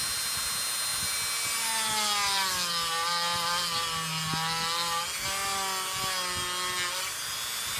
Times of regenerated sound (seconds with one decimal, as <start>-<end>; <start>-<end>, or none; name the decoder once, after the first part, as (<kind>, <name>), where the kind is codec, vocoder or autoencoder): none